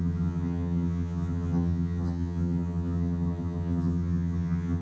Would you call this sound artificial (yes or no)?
yes